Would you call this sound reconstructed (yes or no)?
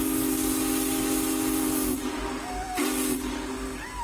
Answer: no